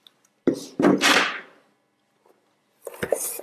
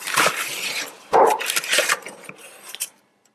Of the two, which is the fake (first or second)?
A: second